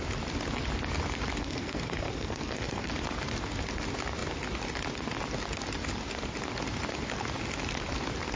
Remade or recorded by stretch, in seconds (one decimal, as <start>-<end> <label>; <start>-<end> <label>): 0.0-1.4 recorded; 1.4-2.9 remade; 2.9-8.4 recorded

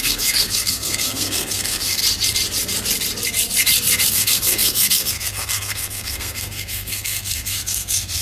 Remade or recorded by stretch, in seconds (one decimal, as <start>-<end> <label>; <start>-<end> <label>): 0.0-2.0 remade; 2.0-4.1 recorded; 4.1-8.2 remade

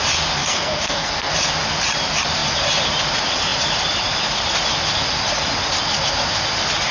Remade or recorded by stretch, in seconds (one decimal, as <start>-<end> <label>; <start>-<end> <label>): 0.0-0.4 recorded; 0.4-1.3 remade; 1.3-6.9 recorded

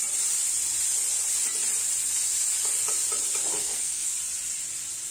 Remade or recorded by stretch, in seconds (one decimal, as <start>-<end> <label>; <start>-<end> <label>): 0.0-3.6 recorded; 3.6-4.1 remade; 4.1-5.1 recorded

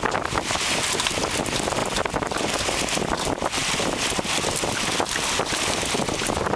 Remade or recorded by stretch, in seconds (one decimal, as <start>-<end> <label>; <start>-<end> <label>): 0.0-6.6 recorded

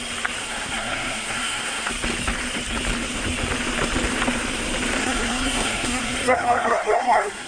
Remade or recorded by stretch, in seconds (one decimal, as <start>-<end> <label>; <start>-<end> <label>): 0.0-0.4 recorded; 0.4-1.9 remade; 1.9-5.0 recorded; 5.0-7.5 remade

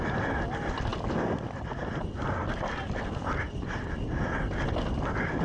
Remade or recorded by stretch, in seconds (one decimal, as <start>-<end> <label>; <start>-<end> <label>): 0.0-5.4 recorded

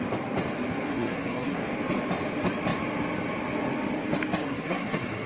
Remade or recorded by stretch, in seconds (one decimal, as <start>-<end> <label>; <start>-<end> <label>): 0.0-0.9 recorded; 0.9-1.6 remade; 1.6-4.4 recorded; 4.4-5.3 remade